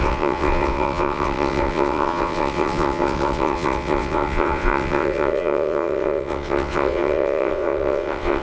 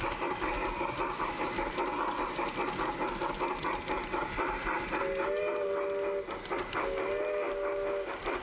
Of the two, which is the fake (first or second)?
first